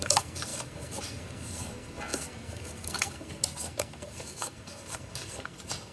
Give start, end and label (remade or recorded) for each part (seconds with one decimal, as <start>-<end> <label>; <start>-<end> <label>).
0.0-5.9 remade